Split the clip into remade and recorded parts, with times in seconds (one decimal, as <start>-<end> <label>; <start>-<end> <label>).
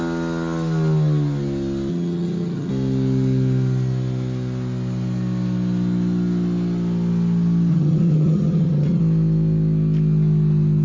0.0-1.9 recorded; 1.9-2.7 remade; 2.7-7.7 recorded; 7.7-9.0 remade; 9.0-10.8 recorded